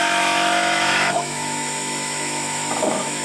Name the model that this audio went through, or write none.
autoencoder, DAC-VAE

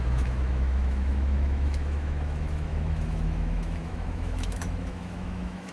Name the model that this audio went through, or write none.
autoencoder, DAC-VAE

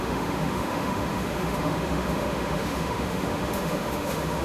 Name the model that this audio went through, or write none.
autoencoder, DAC-VAE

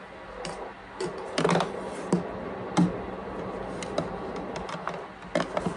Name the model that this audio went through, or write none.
none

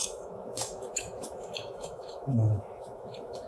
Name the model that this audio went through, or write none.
autoencoder, DAC-VAE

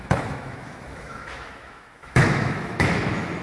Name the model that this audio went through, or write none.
autoencoder, DAC-VAE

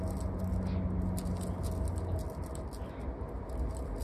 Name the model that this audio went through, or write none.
none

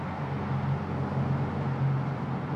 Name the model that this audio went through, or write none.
none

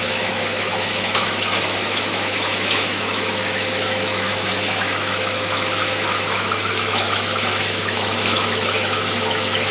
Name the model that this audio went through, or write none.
autoencoder, DAC-VAE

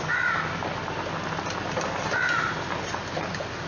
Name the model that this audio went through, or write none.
none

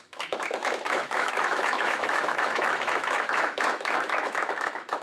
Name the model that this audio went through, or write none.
autoencoder, DAC-VAE